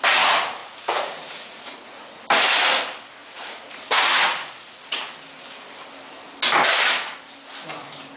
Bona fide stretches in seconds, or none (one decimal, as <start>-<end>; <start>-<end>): 0.0-0.6; 2.2-3.2; 5.0-8.2